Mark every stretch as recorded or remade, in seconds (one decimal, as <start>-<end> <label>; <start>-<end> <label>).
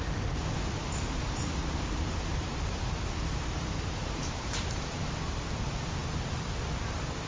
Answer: 0.0-1.6 recorded; 1.6-3.0 remade; 3.0-4.0 recorded; 4.0-5.0 remade; 5.0-7.3 recorded